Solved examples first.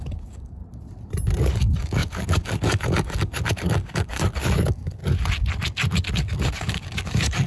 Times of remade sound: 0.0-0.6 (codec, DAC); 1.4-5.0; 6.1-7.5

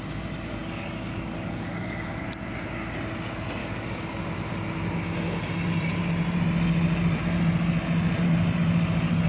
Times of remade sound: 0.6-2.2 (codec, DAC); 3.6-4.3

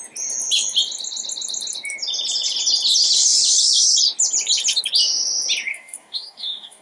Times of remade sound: 5.7-6.8 (codec, DAC)

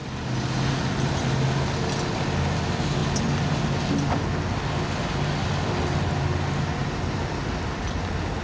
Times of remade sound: none

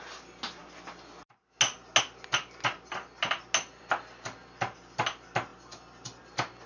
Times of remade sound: none